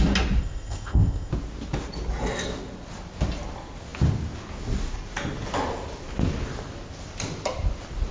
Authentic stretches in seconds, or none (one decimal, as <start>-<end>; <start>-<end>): 0.0-0.4; 1.3-8.1